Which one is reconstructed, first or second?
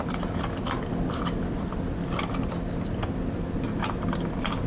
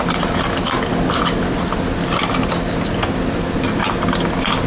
first